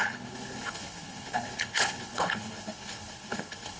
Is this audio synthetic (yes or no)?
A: yes